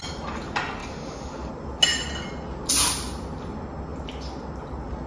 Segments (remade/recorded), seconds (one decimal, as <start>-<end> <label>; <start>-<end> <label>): 0.0-0.8 recorded; 0.8-1.5 remade; 1.5-5.1 recorded